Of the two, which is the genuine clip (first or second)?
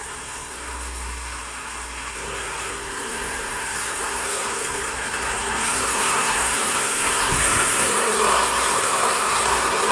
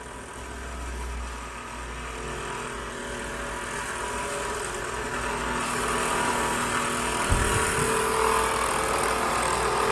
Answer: second